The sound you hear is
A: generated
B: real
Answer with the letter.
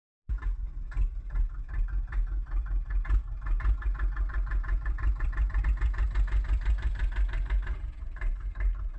A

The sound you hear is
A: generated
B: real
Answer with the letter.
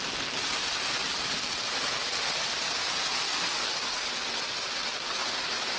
B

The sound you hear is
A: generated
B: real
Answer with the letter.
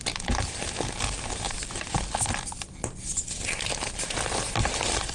B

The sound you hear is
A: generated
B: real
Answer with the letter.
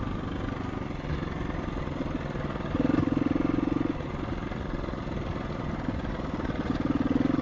B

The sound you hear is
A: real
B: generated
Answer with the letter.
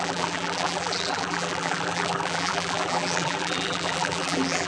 B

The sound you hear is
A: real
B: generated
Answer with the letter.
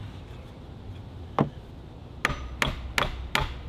A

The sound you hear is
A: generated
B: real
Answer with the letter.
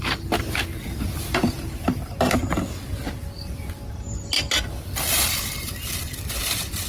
B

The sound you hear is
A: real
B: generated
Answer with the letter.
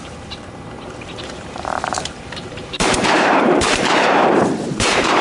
B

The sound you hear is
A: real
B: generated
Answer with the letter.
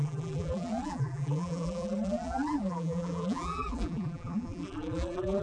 B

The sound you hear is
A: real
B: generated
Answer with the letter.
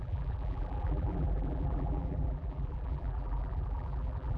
B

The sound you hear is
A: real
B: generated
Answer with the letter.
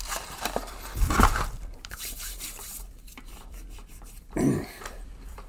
B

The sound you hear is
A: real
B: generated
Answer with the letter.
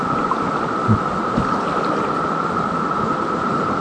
A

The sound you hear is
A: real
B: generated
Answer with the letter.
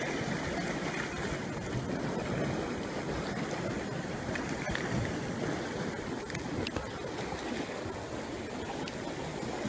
A